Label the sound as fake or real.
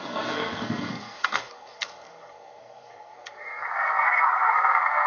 fake